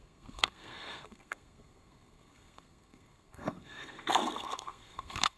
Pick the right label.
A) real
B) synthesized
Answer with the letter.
B